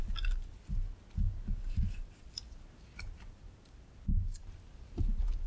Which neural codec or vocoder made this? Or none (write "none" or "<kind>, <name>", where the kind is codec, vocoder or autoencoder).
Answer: none